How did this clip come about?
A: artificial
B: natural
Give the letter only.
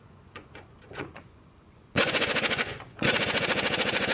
A